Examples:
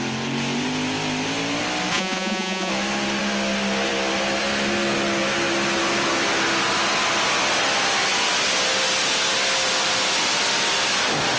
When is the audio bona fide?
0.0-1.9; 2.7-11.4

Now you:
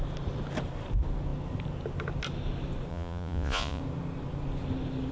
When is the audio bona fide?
0.0-2.9; 3.8-5.1